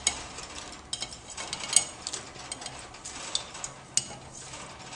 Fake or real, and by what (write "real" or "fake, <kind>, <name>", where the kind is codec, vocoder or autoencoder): real